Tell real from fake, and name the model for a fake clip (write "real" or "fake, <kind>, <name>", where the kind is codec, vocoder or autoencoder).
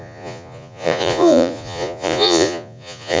fake, vocoder, Vocos